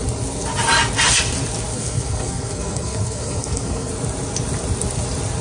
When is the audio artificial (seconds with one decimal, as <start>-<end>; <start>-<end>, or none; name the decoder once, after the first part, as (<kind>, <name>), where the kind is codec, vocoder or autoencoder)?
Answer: 1.7-3.9 (codec, SNAC)